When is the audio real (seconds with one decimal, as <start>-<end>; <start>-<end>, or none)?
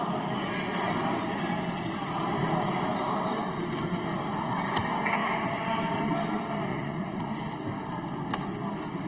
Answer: 0.0-6.7; 7.3-9.1